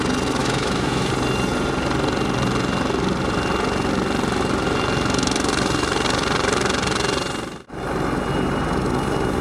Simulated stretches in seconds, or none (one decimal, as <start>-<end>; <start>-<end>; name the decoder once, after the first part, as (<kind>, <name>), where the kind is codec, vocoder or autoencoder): 0.4-1.1 (autoencoder, DAC-VAE)